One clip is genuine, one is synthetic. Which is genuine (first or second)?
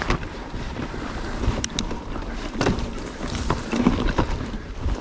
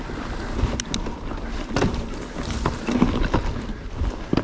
second